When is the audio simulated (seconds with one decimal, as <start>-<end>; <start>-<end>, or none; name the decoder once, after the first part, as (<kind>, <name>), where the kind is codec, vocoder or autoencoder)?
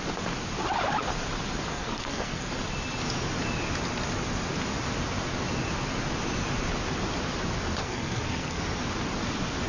1.7-2.5 (codec, SNAC); 7.8-8.6